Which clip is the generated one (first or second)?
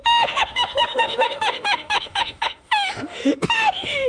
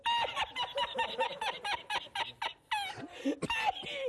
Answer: first